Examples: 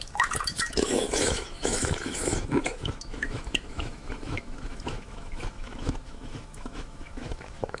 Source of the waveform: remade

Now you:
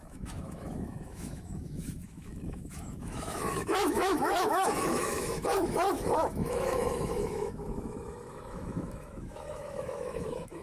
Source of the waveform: remade